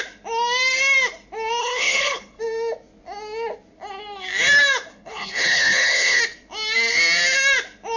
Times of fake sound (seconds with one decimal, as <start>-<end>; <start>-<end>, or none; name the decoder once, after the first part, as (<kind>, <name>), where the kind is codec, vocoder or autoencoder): 1.6-2.4 (codec, HILCodec); 4.9-6.2